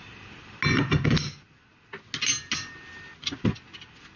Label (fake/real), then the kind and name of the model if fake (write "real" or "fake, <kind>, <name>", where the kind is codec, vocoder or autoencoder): real